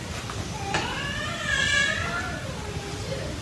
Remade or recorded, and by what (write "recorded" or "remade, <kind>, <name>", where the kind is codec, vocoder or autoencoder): recorded